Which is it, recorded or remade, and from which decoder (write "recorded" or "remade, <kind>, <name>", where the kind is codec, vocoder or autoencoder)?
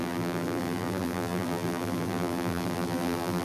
remade, vocoder, BigVGAN v2